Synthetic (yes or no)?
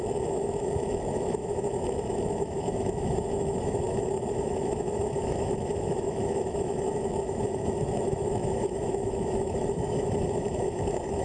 yes